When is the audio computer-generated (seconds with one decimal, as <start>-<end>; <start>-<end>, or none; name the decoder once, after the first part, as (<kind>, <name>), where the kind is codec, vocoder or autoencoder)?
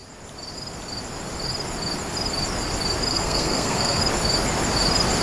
3.1-4.0 (codec, SNAC)